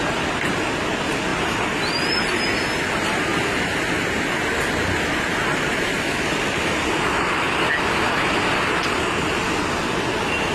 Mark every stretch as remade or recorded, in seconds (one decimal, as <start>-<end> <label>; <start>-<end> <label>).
0.0-10.5 recorded